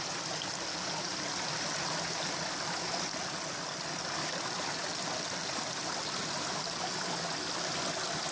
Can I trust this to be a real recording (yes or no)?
yes